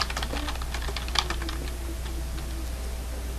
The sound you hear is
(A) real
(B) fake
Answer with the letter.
A